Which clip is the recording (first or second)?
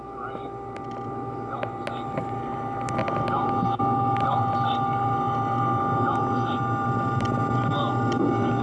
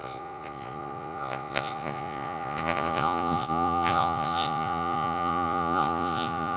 first